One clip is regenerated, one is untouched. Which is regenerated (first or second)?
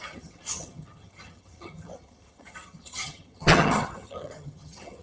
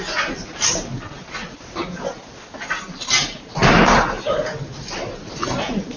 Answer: first